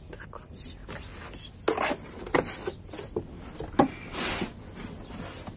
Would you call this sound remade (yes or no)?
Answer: no